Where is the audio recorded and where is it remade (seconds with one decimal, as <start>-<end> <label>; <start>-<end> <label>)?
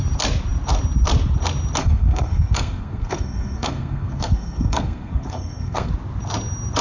0.0-1.8 recorded; 1.8-5.9 remade; 5.9-6.8 recorded